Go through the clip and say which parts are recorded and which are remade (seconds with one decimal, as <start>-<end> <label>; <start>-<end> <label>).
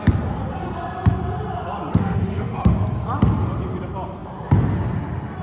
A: 0.0-1.9 recorded; 1.9-2.8 remade; 2.8-5.4 recorded